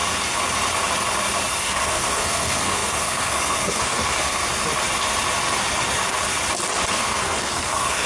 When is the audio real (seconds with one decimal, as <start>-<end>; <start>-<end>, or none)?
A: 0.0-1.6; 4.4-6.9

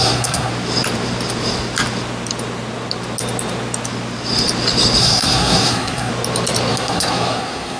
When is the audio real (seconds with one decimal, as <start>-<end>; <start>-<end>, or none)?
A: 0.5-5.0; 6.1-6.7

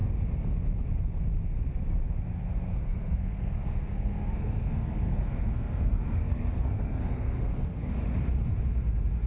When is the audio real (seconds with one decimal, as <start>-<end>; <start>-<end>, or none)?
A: 0.0-2.7; 7.9-9.3